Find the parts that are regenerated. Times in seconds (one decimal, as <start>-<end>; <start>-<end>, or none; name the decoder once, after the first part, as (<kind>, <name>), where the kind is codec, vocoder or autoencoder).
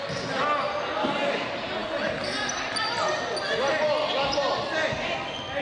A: none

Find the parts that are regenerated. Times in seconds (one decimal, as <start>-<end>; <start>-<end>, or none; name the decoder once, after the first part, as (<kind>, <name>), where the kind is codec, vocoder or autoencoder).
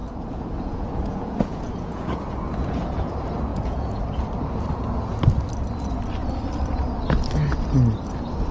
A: 0.0-3.1 (vocoder, Vocos); 3.5-4.0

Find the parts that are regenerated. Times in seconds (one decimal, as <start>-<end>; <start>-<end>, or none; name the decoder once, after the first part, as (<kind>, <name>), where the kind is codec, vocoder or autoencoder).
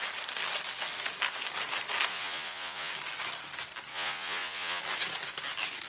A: 2.1-2.9 (vocoder, Vocos); 3.9-4.8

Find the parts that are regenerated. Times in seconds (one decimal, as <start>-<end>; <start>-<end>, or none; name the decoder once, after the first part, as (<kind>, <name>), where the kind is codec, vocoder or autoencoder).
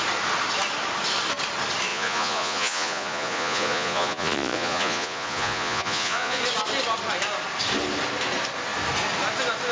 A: 1.9-6.4 (vocoder, Vocos)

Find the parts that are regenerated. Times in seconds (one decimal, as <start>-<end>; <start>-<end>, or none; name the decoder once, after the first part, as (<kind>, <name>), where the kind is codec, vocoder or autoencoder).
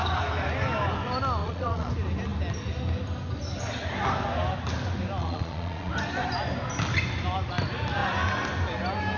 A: 1.4-1.9 (vocoder, Vocos); 5.2-5.9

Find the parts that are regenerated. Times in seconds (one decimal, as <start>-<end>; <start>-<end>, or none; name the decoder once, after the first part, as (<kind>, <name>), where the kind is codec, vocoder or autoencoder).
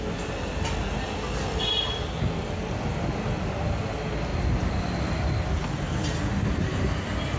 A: none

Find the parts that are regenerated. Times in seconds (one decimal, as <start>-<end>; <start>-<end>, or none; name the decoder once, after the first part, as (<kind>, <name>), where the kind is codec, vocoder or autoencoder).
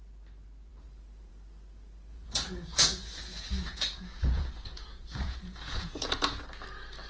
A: 2.1-6.4 (vocoder, Vocos)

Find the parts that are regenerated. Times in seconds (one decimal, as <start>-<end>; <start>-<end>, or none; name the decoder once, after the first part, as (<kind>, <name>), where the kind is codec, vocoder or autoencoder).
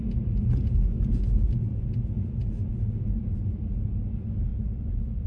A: 1.7-4.0 (vocoder, Vocos); 4.5-5.3